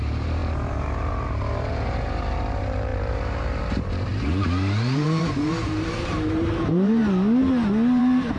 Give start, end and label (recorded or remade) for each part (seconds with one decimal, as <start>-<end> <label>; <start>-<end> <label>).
0.0-7.0 remade; 7.0-8.0 recorded; 8.0-8.4 remade